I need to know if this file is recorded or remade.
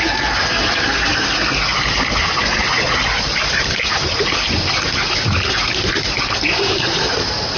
recorded